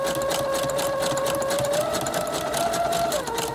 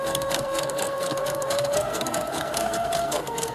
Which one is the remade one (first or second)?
second